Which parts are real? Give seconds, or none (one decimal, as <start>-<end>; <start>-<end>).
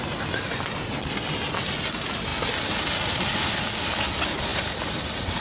0.0-5.4